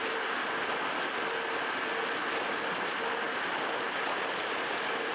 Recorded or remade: recorded